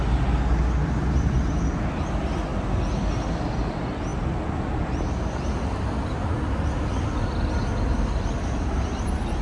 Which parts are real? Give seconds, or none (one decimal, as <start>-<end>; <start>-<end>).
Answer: 0.0-9.4